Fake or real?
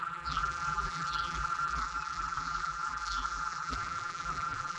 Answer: fake